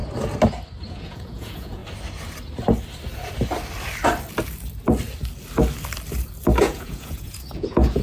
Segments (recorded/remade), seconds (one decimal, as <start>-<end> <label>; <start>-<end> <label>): 0.0-0.9 recorded; 0.9-1.8 remade; 1.8-6.6 recorded; 6.6-8.0 remade